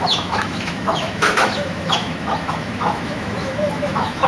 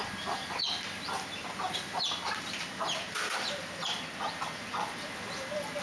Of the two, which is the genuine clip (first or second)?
second